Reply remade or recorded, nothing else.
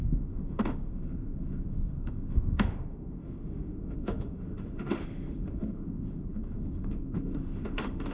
remade